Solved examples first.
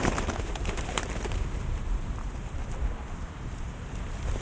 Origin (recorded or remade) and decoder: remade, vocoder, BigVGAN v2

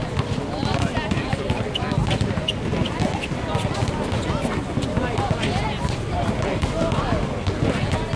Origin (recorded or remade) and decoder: recorded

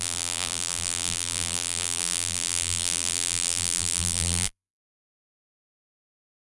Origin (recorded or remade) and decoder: remade, vocoder, BigVGAN v2